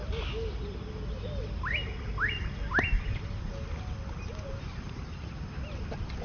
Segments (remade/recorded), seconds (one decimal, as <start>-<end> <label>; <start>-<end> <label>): 0.0-6.2 recorded